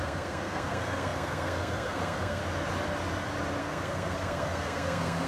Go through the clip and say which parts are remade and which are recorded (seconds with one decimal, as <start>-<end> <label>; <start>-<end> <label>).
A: 0.0-2.4 remade; 2.4-3.6 recorded; 3.6-5.3 remade